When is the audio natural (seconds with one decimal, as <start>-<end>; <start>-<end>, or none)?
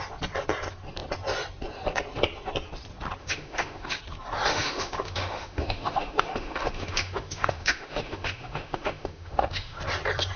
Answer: 0.0-3.2; 4.0-4.5; 9.8-10.4